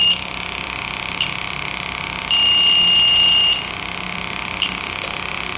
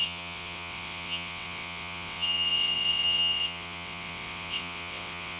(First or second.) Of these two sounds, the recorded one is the first